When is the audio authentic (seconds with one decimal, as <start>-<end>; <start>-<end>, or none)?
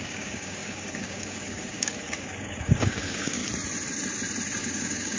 3.4-4.6